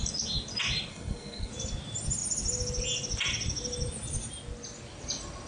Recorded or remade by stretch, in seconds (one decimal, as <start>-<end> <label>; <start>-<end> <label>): 0.0-0.9 recorded; 0.9-1.5 remade; 1.5-5.5 recorded